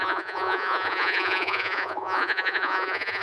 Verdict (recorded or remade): remade